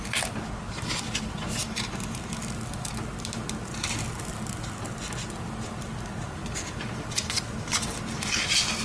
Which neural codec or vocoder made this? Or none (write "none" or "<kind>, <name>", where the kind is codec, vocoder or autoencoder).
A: none